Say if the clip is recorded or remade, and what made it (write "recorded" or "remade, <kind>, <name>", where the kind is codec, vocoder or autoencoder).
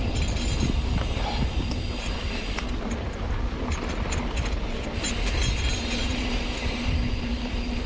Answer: recorded